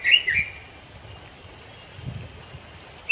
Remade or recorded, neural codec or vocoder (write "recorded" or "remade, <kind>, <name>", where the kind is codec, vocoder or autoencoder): recorded